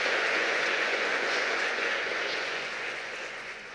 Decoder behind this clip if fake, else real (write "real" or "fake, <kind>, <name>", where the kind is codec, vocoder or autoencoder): fake, vocoder, Vocos